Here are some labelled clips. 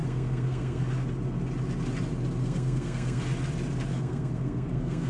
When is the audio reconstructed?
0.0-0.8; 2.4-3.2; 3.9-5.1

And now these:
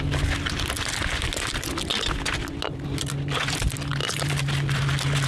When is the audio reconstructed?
none